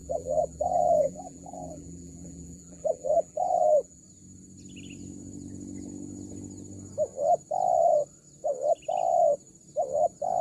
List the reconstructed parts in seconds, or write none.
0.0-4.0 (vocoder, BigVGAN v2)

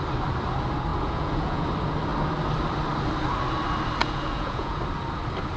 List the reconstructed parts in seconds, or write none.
0.9-1.7 (vocoder, Vocos); 4.0-4.8

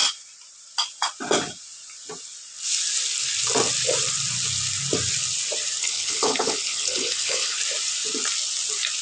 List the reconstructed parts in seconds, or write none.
5.8-7.6 (codec, HILCodec)

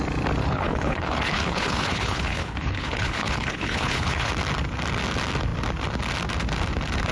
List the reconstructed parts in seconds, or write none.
0.4-4.3 (codec, HILCodec)

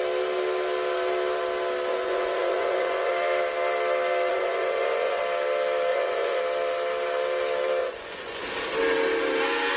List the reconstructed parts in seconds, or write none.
1.9-3.1 (vocoder, Vocos); 4.3-5.2; 5.9-6.4; 7.8-8.4

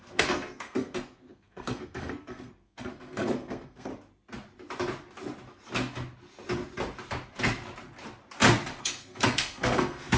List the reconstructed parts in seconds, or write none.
0.0-3.9 (codec, SNAC); 8.8-10.2

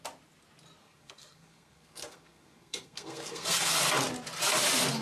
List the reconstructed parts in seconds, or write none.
0.8-3.8 (codec, SNAC)